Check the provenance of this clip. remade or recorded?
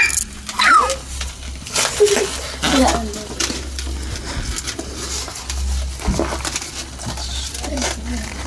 recorded